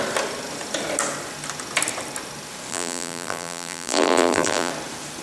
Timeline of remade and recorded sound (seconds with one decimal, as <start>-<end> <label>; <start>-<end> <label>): 0.0-2.7 recorded; 2.7-4.7 remade; 4.7-5.2 recorded

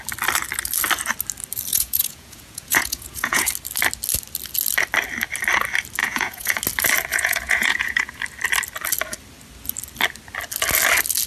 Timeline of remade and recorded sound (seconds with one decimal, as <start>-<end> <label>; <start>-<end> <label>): 0.0-1.7 recorded; 1.7-3.5 remade; 3.5-6.0 recorded; 6.0-6.6 remade; 6.6-7.1 recorded; 7.1-8.2 remade; 8.2-11.3 recorded

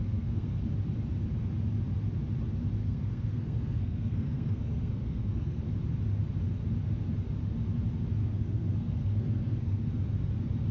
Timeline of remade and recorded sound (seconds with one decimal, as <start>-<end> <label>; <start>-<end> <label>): 0.0-0.6 remade; 0.6-2.8 recorded; 2.8-5.6 remade; 5.6-8.2 recorded; 8.2-9.9 remade; 9.9-10.7 recorded

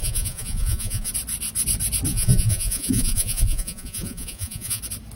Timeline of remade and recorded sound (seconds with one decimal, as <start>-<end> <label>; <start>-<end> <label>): 0.0-1.1 remade; 1.1-2.1 recorded; 2.1-4.8 remade; 4.8-5.2 recorded

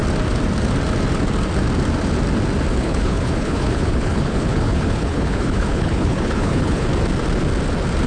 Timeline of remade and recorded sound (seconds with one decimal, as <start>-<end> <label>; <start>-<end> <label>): 0.0-2.7 recorded; 2.7-6.9 remade; 6.9-8.1 recorded

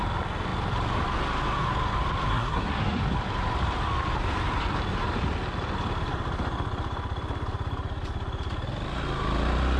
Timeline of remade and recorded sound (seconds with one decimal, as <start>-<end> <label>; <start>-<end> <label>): 0.0-2.3 recorded; 2.3-3.0 remade; 3.0-9.8 recorded

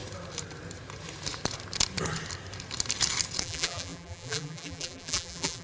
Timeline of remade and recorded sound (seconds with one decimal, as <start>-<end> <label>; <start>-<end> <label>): 0.0-3.4 recorded; 3.4-5.6 remade